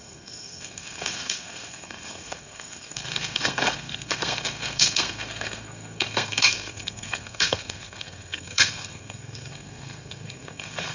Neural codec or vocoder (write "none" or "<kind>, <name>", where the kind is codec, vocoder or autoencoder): codec, SNAC